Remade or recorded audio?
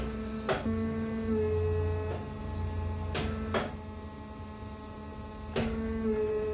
recorded